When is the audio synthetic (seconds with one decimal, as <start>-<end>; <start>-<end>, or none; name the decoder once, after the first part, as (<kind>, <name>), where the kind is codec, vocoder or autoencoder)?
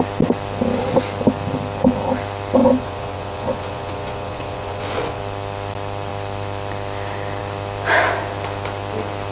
2.6-5.2 (vocoder, Vocos)